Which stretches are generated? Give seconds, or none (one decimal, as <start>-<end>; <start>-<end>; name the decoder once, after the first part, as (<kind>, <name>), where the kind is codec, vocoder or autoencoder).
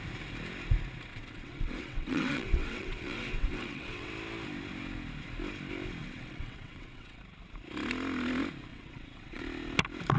1.1-4.1 (vocoder, WaveNeXt); 6.0-7.2; 8.7-9.4